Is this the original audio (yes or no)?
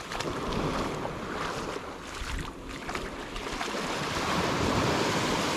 yes